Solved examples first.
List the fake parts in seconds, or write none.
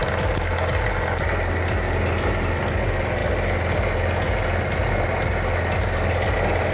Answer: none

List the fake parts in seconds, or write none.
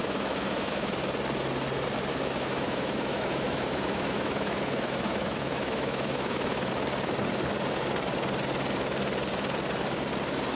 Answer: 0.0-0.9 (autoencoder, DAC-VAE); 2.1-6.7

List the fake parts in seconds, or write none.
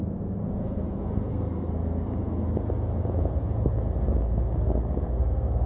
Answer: 0.0-0.4 (codec, SNAC); 1.3-2.1; 4.6-5.7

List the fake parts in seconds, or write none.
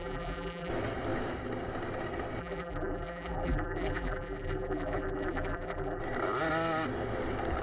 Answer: 0.0-0.7 (vocoder, BigVGAN v2); 2.4-6.0